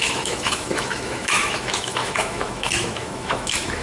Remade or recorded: remade